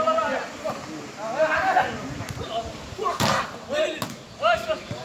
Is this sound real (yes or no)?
yes